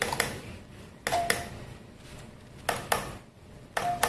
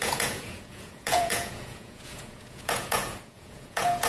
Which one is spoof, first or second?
second